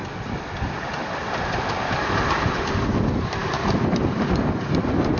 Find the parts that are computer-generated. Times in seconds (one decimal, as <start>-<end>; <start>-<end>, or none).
0.0-1.9